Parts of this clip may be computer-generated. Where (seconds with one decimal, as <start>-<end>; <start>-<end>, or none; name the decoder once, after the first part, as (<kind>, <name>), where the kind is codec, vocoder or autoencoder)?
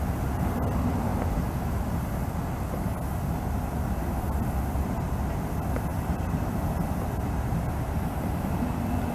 none